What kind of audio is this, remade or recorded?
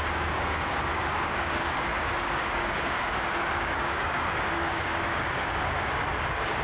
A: remade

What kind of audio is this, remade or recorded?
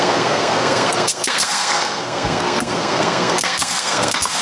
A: remade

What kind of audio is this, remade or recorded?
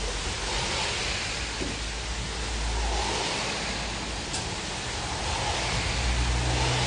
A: recorded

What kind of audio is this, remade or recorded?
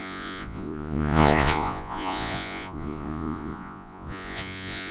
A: remade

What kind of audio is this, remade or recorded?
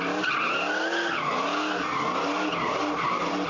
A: recorded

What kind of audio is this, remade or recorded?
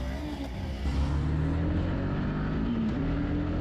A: recorded